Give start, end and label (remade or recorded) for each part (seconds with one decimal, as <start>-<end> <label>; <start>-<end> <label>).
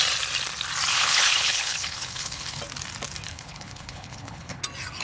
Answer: 0.0-0.9 recorded; 0.9-2.6 remade; 2.6-3.3 recorded; 3.3-4.6 remade; 4.6-5.0 recorded